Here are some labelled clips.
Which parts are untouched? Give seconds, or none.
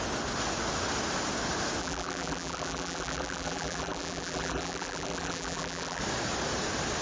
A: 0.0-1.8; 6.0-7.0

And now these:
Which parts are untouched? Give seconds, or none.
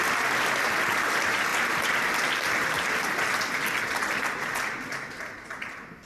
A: 0.0-6.1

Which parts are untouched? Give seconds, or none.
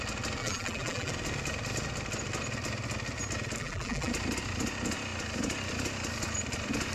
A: 0.0-0.4; 1.1-3.6; 4.1-6.9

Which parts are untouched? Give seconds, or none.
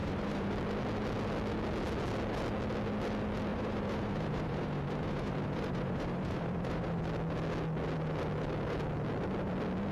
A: 0.5-3.5; 7.0-9.9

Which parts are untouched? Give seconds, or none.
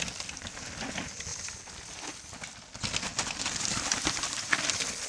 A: 0.0-5.1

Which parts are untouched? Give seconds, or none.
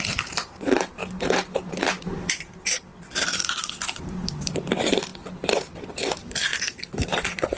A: 1.0-1.7; 2.9-4.0; 5.1-5.9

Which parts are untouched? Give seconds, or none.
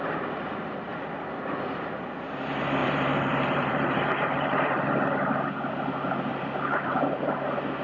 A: 0.0-2.8; 4.8-6.3; 7.3-7.8